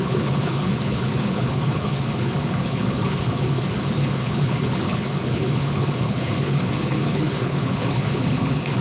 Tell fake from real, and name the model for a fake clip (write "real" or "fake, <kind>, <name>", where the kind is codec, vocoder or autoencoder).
fake, codec, HILCodec